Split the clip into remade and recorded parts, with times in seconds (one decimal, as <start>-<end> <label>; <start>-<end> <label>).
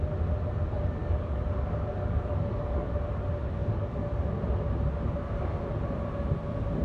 0.0-1.0 recorded; 1.0-2.9 remade; 2.9-3.6 recorded; 3.6-4.3 remade; 4.3-6.8 recorded